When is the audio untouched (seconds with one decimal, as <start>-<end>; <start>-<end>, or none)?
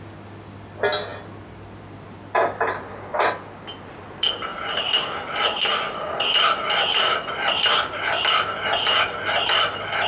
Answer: 0.0-10.1